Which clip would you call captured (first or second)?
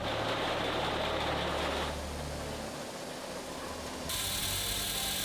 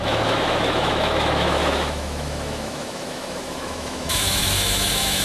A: first